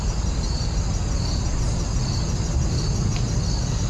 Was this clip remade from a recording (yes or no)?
no